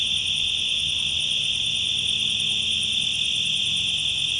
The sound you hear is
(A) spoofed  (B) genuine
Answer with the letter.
B